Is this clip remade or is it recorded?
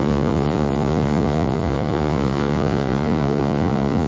remade